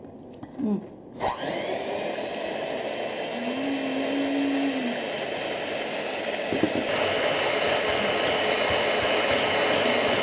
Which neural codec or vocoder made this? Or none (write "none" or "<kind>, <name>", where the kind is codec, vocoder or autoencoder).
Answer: none